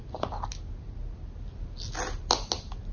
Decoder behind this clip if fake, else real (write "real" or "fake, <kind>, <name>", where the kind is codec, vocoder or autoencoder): real